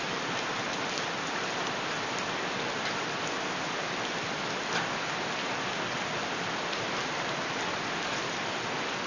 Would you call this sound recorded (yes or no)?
yes